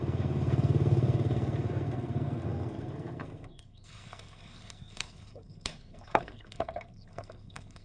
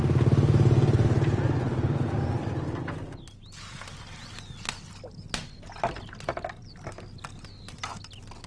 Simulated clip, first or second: first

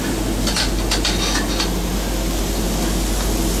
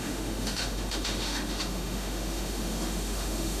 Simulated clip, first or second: second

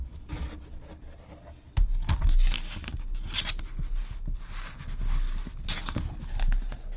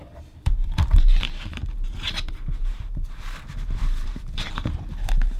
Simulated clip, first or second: second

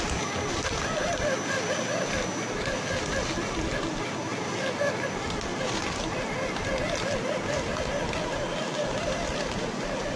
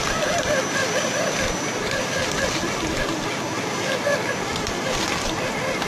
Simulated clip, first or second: second